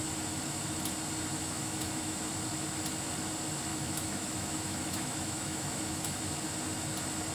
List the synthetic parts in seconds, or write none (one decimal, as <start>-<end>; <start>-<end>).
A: 1.3-2.2; 3.7-6.2